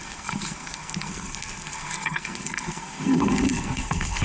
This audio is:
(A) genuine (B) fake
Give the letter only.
B